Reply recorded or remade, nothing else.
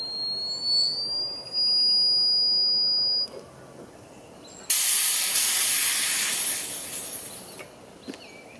recorded